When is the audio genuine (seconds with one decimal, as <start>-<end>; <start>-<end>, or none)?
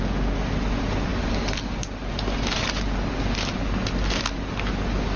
0.0-5.2